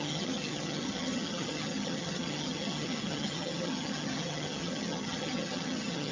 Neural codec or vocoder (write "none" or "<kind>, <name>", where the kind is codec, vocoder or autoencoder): vocoder, HiFi-GAN